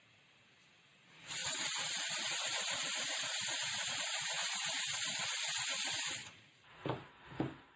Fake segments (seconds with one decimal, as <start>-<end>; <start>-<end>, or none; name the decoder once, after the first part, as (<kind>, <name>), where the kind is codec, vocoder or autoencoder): 1.4-4.8 (vocoder, BigVGAN v2); 6.2-7.1